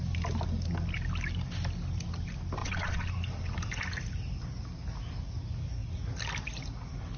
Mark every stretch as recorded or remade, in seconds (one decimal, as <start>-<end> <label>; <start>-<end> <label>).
0.0-2.6 recorded; 2.6-3.1 remade; 3.1-7.2 recorded